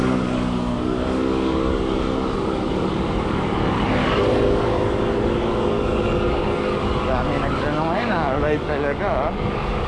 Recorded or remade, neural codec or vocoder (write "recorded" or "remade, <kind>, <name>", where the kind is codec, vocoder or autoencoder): remade, codec, DAC